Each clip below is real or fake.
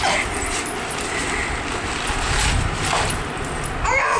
real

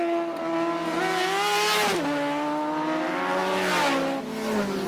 real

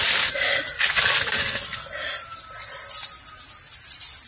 real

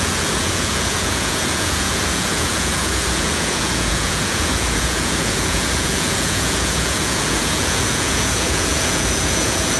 fake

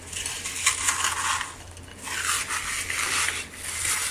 real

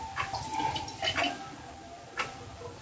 real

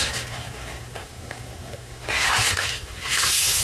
fake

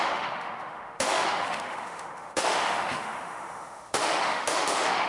fake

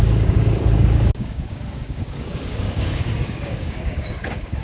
fake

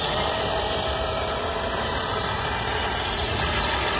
real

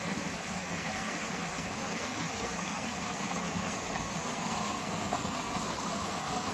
fake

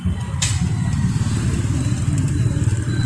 real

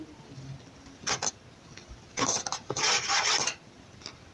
real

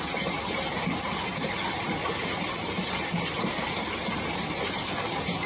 real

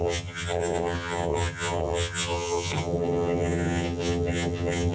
fake